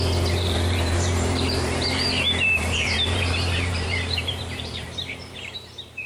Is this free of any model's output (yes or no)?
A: no